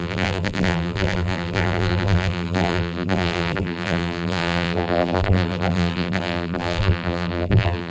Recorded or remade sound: remade